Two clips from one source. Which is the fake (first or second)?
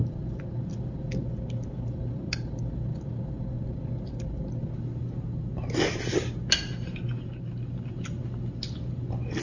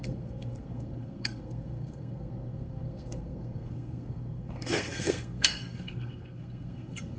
second